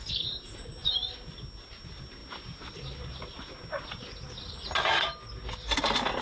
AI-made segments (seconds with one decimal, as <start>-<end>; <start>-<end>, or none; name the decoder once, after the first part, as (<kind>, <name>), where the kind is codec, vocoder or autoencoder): none